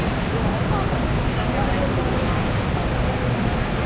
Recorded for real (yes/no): yes